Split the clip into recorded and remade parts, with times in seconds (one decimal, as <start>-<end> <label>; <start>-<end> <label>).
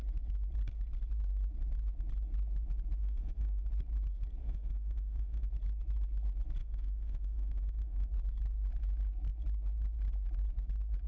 0.0-3.0 recorded; 3.0-3.6 remade; 3.6-4.4 recorded; 4.4-5.5 remade; 5.5-6.6 recorded; 6.6-8.1 remade; 8.1-11.1 recorded